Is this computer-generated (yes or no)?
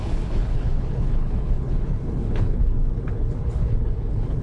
yes